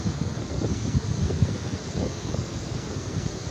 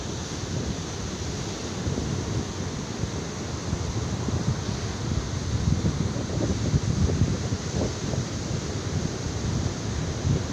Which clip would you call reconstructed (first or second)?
first